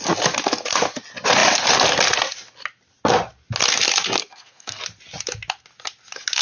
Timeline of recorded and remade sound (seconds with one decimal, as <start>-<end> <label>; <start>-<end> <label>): 0.0-4.2 recorded; 4.2-4.8 remade; 4.8-6.4 recorded